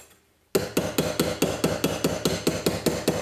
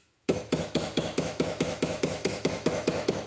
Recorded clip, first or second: first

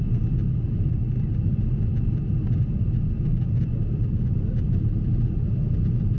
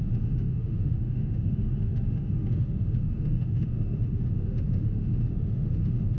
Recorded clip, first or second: first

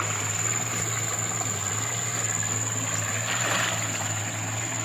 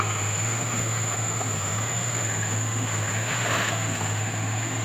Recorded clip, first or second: first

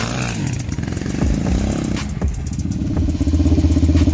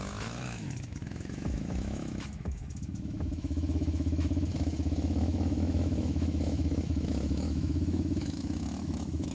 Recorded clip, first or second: first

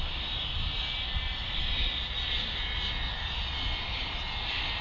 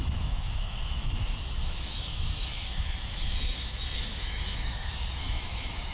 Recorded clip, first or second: first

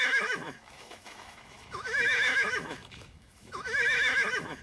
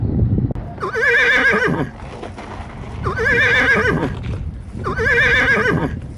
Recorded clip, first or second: second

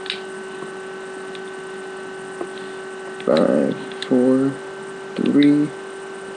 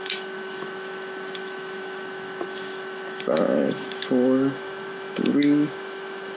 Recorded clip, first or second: first